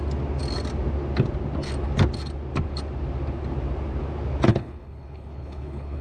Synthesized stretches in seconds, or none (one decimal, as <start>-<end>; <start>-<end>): 4.5-6.0